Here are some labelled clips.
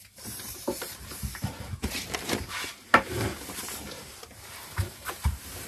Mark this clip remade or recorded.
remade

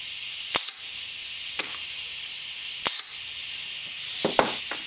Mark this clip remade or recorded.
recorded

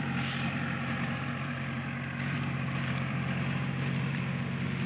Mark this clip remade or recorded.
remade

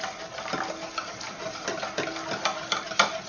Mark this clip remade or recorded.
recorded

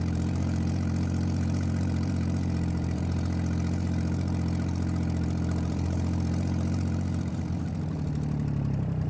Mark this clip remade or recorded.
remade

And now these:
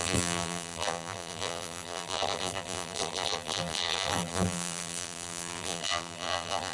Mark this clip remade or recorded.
remade